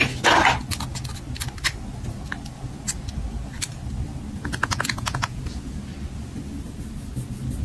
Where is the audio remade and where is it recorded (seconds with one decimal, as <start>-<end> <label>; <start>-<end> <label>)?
0.0-4.6 recorded; 4.6-5.4 remade; 5.4-7.6 recorded